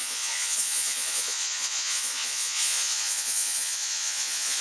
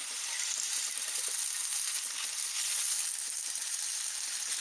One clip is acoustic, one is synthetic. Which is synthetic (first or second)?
first